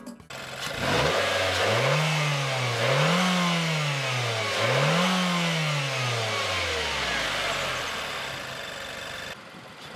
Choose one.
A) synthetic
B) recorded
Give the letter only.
B